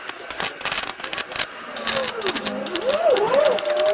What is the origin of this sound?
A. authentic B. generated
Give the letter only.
A